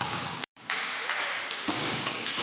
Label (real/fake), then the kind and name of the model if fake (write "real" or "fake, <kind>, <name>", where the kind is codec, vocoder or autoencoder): fake, codec, DAC